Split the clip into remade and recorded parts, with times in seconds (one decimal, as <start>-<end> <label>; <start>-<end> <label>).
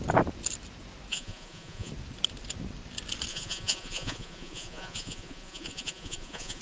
0.0-1.1 recorded; 1.1-1.9 remade; 1.9-3.3 recorded; 3.3-6.6 remade